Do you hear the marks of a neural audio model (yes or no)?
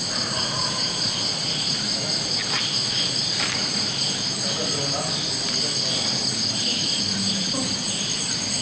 no